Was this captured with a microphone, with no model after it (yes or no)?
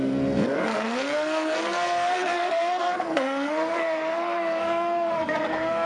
no